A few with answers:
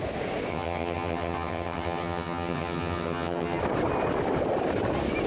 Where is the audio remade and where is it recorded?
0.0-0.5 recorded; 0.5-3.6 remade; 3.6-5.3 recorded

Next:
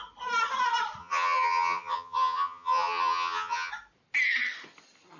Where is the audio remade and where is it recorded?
0.0-1.0 recorded; 1.0-3.7 remade; 3.7-5.2 recorded

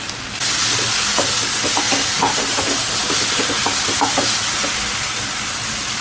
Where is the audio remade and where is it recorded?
0.0-6.0 recorded

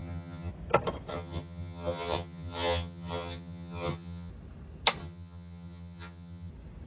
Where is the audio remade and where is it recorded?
0.0-0.5 remade; 0.5-1.1 recorded; 1.1-4.3 remade; 4.3-5.0 recorded; 5.0-6.5 remade; 6.5-6.9 recorded

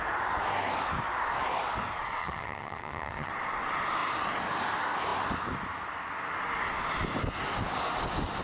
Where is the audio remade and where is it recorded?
0.0-2.2 recorded; 2.2-3.3 remade; 3.3-8.4 recorded

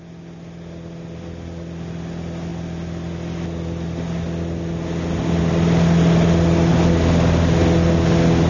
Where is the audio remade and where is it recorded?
0.0-8.5 recorded

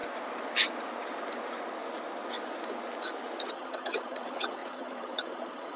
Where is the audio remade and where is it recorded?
0.0-3.5 recorded; 3.5-5.8 remade

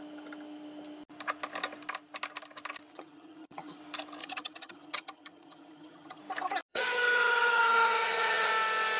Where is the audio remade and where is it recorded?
0.0-2.9 recorded; 2.9-3.8 remade; 3.8-4.2 recorded; 4.2-6.2 remade; 6.2-6.7 recorded; 6.7-8.5 remade; 8.5-9.0 recorded